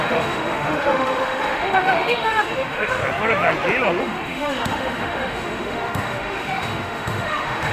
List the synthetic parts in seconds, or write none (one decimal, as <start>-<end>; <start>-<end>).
0.0-3.0; 4.0-7.7